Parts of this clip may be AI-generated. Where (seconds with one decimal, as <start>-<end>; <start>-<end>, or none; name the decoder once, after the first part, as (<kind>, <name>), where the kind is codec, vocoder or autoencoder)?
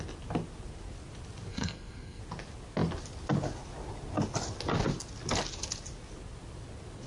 1.5-2.2 (codec, SNAC)